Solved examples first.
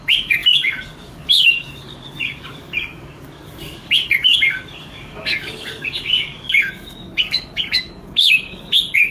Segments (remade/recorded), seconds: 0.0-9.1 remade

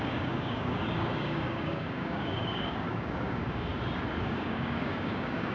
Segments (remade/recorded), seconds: 0.0-3.7 remade; 3.7-4.2 recorded; 4.2-5.5 remade

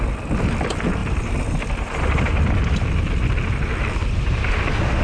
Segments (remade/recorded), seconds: 0.0-1.0 recorded; 1.0-2.3 remade; 2.3-4.0 recorded; 4.0-4.5 remade; 4.5-5.0 recorded